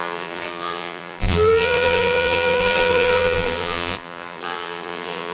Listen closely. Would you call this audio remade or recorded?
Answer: remade